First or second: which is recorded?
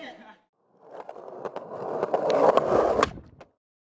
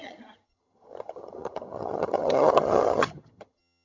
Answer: first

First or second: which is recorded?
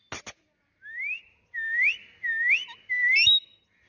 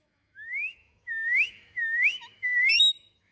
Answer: first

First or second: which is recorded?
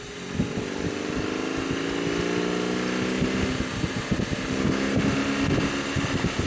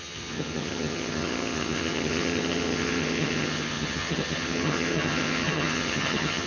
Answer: first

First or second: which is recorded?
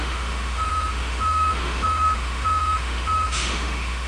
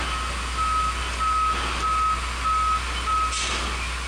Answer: second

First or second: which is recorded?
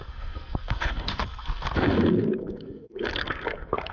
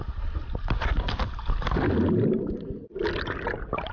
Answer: second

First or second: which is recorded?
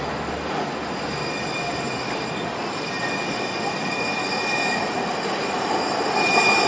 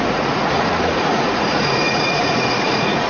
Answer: first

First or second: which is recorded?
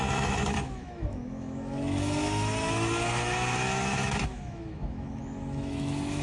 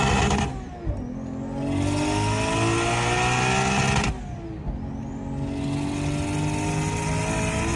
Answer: second